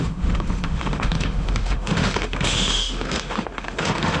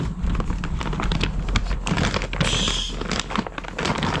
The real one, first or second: second